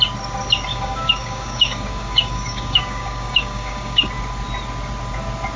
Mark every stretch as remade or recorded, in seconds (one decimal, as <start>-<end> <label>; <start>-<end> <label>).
0.0-0.7 recorded; 0.7-4.1 remade; 4.1-5.6 recorded